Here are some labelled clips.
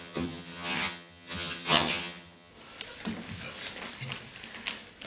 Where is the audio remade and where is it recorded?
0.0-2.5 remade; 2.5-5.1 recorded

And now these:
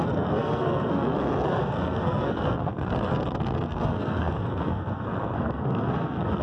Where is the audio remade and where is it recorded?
0.0-6.4 remade

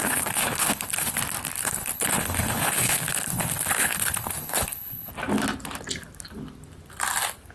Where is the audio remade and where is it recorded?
0.0-1.2 remade; 1.2-1.6 recorded; 1.6-5.1 remade; 5.1-7.5 recorded

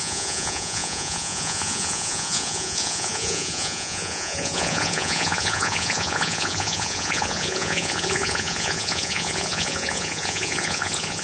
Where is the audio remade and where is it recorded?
0.0-11.2 remade

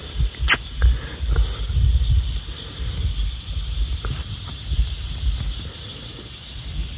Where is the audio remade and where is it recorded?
0.0-7.0 recorded

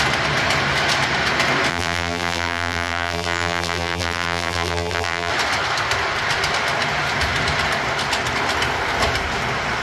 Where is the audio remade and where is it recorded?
0.0-1.7 recorded; 1.7-5.3 remade; 5.3-9.8 recorded

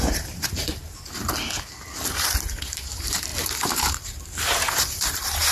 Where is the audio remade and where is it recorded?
0.0-0.8 remade; 0.8-2.1 recorded; 2.1-5.5 remade

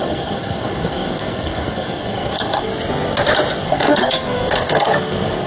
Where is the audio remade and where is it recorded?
0.0-2.7 remade; 2.7-3.6 recorded; 3.6-5.5 remade